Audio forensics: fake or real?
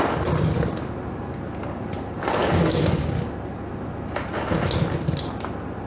real